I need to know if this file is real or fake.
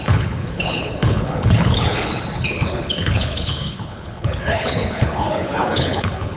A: fake